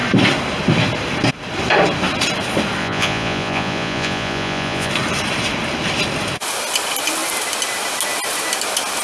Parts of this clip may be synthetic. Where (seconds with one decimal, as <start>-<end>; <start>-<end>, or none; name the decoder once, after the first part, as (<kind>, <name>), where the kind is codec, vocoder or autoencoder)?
2.8-4.9 (vocoder, Vocos)